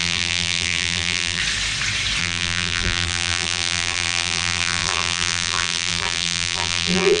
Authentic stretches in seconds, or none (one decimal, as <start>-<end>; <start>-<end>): 1.4-2.2